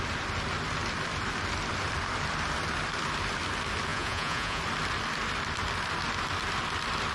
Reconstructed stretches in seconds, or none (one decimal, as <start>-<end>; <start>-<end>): 3.9-4.6